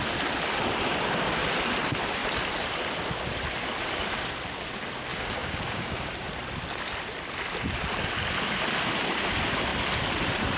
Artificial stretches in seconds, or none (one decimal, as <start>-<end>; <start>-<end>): 5.1-6.1